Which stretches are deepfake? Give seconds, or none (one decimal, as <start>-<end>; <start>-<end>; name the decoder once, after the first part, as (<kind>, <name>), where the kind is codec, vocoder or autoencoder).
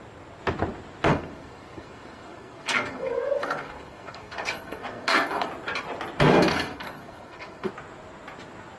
1.1-5.5 (codec, SNAC); 6.3-7.7